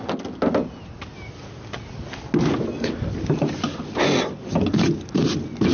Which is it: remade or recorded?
recorded